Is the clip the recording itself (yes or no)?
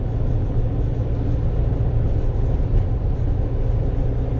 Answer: yes